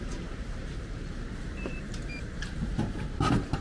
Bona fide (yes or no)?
no